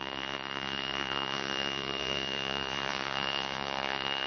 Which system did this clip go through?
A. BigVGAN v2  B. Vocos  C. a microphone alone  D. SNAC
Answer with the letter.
B